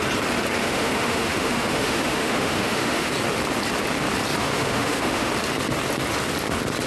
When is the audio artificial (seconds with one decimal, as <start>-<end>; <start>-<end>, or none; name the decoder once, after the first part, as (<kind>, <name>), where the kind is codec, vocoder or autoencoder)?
0.6-3.1 (autoencoder, DAC-VAE); 4.4-5.3